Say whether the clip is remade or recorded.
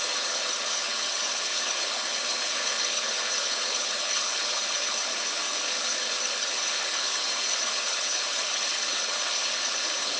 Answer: remade